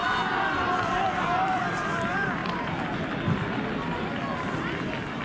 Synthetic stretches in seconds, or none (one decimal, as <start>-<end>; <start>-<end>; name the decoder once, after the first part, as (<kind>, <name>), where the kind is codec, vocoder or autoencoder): none